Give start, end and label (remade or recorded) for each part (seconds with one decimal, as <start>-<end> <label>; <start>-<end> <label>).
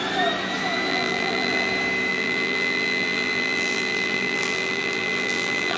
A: 0.0-0.9 recorded; 0.9-1.7 remade; 1.7-2.1 recorded; 2.1-5.8 remade